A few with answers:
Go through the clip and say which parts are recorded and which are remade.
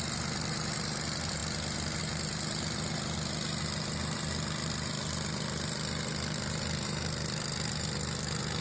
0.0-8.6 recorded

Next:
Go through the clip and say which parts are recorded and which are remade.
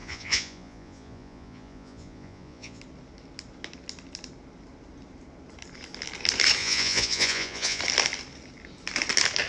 0.0-2.8 remade; 2.8-6.6 recorded; 6.6-7.8 remade; 7.8-9.5 recorded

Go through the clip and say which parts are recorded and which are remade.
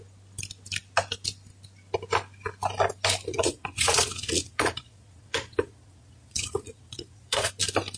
0.0-3.3 recorded; 3.3-7.5 remade; 7.5-8.0 recorded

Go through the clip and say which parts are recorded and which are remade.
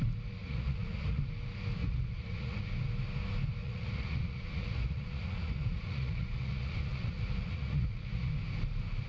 0.0-0.4 recorded; 0.4-1.2 remade; 1.2-1.8 recorded; 1.8-2.6 remade; 2.6-3.6 recorded; 3.6-8.3 remade; 8.3-9.1 recorded